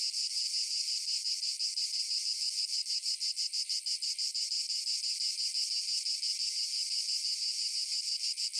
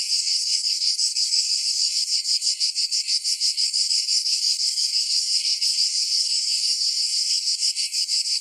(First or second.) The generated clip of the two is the second